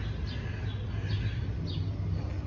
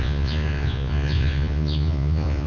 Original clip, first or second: first